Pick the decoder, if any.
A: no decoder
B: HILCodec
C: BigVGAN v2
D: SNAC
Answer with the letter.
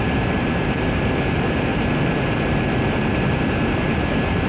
C